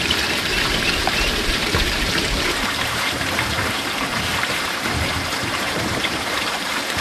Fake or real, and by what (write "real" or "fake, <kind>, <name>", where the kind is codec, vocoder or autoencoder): fake, vocoder, BigVGAN v2